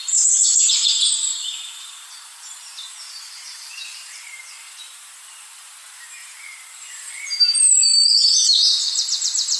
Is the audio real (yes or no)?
no